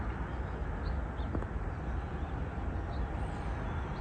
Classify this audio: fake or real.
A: real